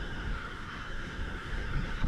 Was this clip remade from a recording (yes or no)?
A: yes